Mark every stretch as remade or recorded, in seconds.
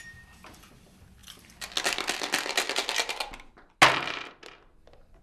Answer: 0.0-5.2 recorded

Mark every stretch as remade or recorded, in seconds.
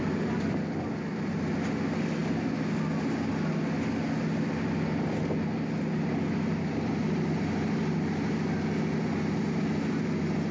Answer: 0.0-10.5 recorded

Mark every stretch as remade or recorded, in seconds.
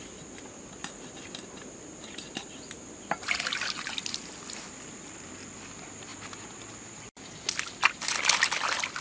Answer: 0.0-9.0 recorded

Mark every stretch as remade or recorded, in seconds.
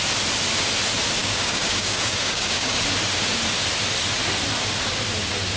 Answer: 0.0-1.2 recorded; 1.2-2.8 remade; 2.8-5.6 recorded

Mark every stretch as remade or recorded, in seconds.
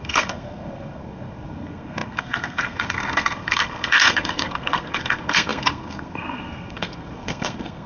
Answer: 0.0-7.9 remade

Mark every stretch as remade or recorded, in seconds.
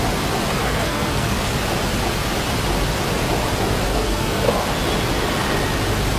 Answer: 0.0-0.6 recorded; 0.6-1.5 remade; 1.5-3.9 recorded; 3.9-4.5 remade; 4.5-6.2 recorded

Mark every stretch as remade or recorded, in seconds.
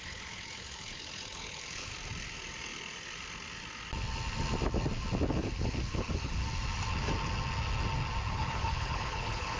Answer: 0.0-1.9 remade; 1.9-5.3 recorded; 5.3-6.4 remade; 6.4-8.3 recorded; 8.3-9.6 remade